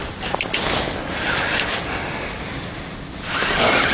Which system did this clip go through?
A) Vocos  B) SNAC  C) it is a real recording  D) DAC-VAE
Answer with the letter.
C